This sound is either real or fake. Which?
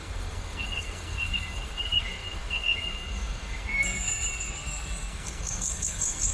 fake